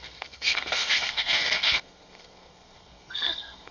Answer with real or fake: fake